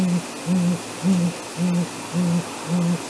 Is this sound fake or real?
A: real